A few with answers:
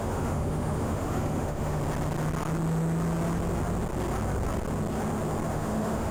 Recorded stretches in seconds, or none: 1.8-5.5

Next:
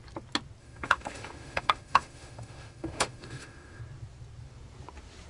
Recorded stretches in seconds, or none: 0.0-0.6; 3.8-5.3

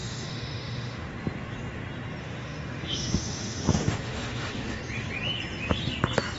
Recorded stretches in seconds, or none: 1.1-2.2; 4.8-6.4